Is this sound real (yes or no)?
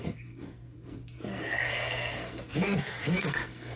no